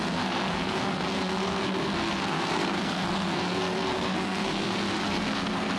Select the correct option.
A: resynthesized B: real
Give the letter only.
A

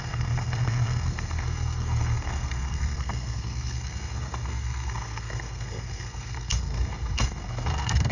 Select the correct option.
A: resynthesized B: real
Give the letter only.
A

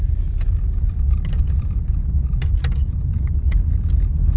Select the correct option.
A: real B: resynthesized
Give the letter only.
A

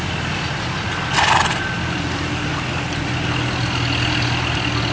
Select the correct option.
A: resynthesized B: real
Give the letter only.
B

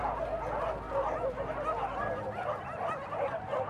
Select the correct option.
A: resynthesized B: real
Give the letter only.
B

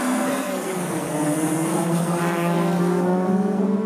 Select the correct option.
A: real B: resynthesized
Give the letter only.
B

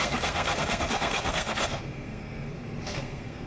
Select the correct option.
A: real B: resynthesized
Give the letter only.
B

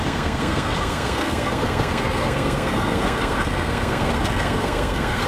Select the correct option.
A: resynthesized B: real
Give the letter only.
A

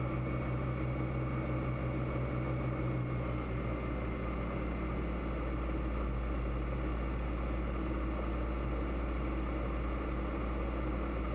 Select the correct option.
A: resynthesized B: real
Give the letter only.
B